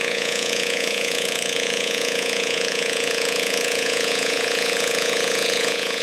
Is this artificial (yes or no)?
yes